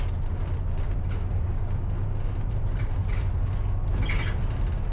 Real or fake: real